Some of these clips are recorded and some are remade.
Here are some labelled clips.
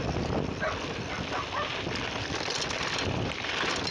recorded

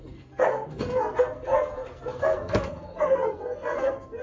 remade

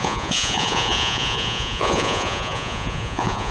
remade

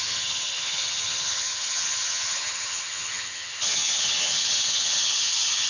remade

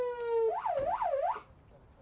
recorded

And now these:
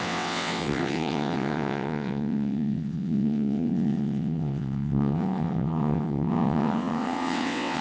remade